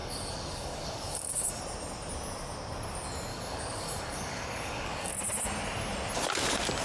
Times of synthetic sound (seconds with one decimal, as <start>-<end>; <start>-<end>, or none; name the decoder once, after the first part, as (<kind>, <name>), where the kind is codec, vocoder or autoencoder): 0.0-1.6 (codec, DAC); 3.3-5.1